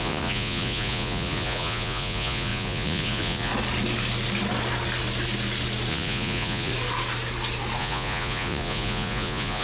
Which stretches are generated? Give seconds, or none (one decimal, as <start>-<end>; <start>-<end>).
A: 0.0-3.5; 5.9-6.7; 7.8-9.6